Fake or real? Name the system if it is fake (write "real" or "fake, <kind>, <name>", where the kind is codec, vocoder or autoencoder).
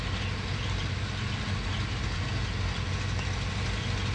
real